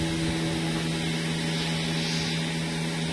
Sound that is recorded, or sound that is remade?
recorded